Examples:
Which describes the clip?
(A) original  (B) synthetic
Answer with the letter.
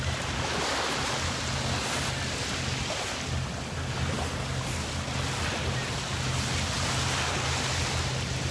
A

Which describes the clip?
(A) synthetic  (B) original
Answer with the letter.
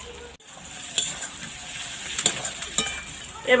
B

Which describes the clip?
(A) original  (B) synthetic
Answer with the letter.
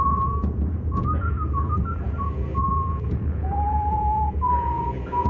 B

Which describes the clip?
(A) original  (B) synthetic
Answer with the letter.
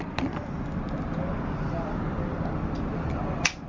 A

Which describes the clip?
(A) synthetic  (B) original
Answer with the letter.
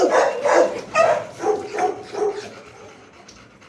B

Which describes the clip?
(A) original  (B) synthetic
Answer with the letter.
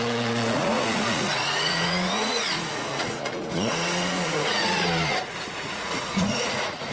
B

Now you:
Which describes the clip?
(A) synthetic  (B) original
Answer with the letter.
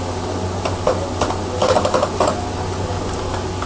B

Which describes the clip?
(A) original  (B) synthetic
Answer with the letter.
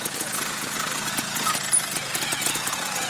B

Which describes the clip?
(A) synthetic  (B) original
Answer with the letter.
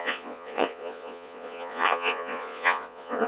A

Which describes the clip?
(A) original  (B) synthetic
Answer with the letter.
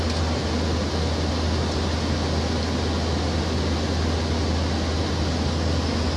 A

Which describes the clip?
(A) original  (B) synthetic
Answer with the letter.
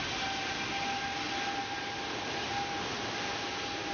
A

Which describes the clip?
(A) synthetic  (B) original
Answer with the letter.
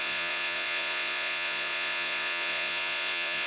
A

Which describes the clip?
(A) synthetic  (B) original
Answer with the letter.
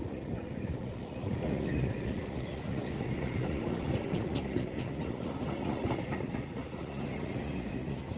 A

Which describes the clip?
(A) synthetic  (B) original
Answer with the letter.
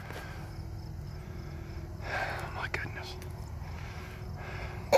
B